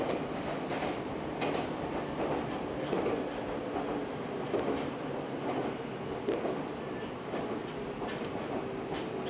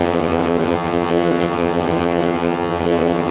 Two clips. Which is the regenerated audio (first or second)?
second